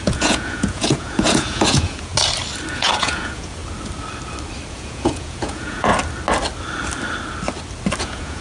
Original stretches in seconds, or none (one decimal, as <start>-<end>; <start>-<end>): 2.1-2.7; 3.6-4.7; 5.9-8.0